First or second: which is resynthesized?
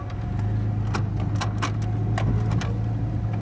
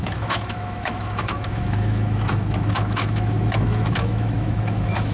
second